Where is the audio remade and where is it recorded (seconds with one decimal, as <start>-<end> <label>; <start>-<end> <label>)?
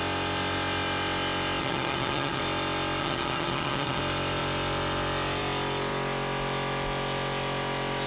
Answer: 0.0-1.6 recorded; 1.6-2.4 remade; 2.4-3.0 recorded; 3.0-4.0 remade; 4.0-8.1 recorded